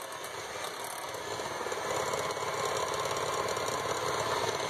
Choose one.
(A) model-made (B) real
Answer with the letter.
B